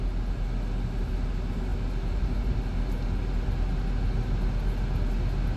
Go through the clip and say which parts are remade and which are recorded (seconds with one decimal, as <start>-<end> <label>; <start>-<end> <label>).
0.0-5.6 recorded